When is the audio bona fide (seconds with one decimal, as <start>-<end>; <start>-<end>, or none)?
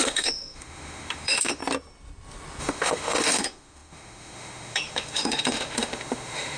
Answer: 1.6-2.6